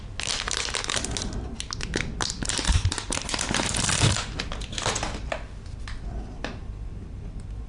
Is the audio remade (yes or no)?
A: no